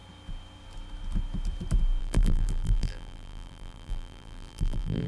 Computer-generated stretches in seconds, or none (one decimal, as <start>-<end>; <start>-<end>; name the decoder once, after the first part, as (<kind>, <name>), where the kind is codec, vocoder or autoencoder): 2.0-5.1 (vocoder, BigVGAN v2)